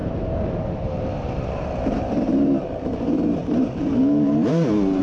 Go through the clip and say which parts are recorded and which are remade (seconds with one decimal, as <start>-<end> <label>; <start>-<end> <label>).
0.0-5.0 remade